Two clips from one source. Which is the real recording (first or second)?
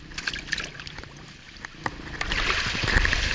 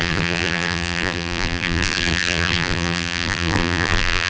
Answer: first